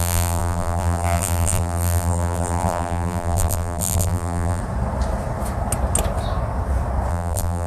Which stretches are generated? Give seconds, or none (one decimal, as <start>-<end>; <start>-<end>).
0.0-4.6; 7.1-7.7